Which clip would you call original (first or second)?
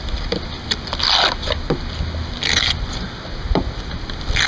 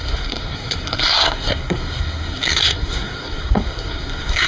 first